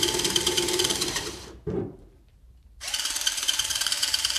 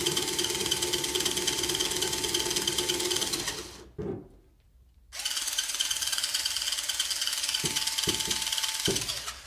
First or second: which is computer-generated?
first